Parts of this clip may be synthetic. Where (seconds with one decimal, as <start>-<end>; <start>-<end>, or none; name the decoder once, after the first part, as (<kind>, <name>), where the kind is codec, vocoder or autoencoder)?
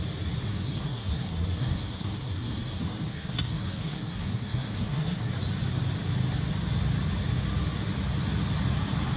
0.5-5.3 (codec, SNAC)